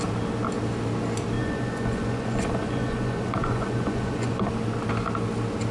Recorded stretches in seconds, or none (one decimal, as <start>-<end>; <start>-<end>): 0.0-1.4; 4.5-5.7